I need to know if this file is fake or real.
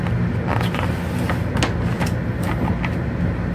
real